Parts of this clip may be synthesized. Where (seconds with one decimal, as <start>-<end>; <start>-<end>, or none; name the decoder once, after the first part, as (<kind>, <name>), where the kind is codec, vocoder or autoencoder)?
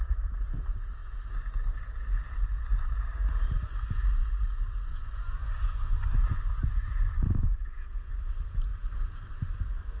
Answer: 4.9-8.1 (vocoder, Vocos)